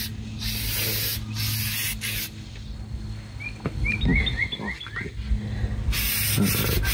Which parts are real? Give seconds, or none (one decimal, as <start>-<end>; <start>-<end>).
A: 0.0-6.9